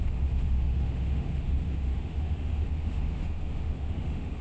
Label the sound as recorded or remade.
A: remade